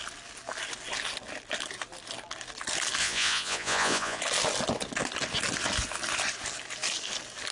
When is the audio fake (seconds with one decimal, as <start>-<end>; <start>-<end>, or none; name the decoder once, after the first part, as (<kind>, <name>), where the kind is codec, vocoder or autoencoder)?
3.0-4.2 (vocoder, Vocos)